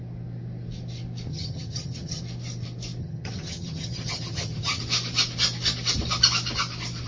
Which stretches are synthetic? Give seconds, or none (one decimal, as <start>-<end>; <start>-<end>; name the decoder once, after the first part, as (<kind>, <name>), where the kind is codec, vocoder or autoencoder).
1.3-2.2 (vocoder, HiFi-GAN); 3.0-4.8